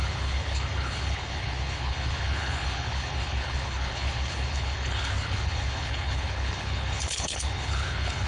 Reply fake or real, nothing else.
fake